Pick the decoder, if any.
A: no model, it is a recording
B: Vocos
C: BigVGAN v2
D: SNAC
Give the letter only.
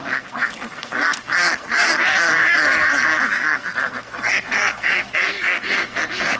D